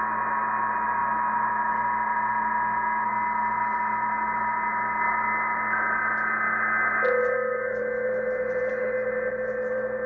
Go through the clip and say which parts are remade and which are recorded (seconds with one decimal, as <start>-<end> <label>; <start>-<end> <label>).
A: 0.0-7.2 recorded; 7.2-7.8 remade; 7.8-10.1 recorded